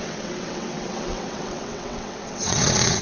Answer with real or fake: fake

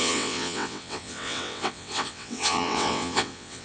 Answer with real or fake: fake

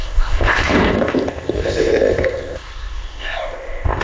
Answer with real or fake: fake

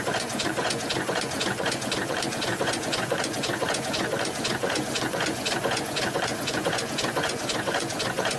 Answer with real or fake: fake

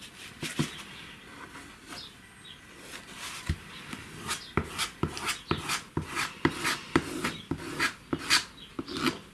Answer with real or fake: real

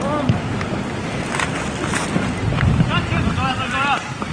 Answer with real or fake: real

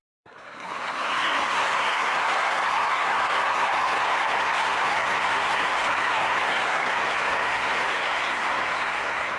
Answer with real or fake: fake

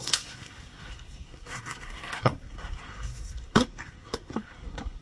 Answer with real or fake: fake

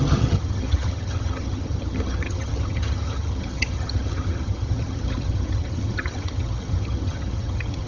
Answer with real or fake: fake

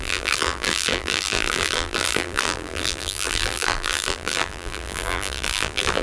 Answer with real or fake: fake